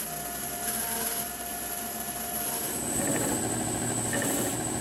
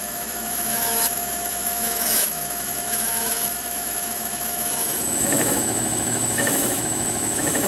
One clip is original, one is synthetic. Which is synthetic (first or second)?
second